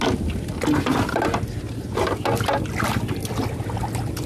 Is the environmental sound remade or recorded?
recorded